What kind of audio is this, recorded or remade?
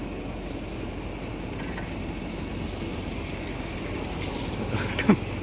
recorded